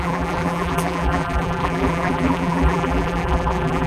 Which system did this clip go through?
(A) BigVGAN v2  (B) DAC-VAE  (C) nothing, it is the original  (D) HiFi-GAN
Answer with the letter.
A